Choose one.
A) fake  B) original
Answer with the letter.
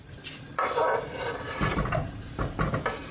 B